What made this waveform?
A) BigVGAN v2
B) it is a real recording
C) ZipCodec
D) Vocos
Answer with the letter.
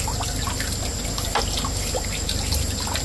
B